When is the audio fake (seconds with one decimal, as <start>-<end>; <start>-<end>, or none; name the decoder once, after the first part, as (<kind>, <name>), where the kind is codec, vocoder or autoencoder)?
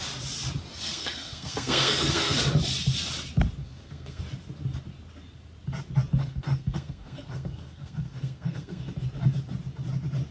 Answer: 0.7-2.4 (codec, SNAC); 3.6-4.2; 6.2-8.9